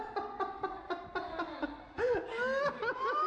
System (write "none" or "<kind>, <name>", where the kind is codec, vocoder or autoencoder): none